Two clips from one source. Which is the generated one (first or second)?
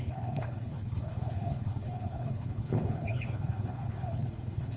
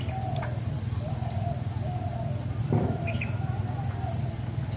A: first